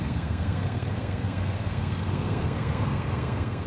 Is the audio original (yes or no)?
no